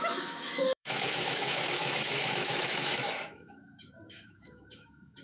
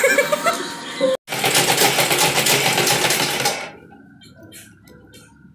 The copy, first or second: first